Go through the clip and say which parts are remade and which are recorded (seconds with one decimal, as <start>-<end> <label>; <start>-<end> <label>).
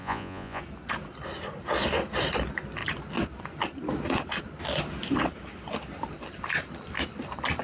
0.0-0.6 remade; 0.6-7.6 recorded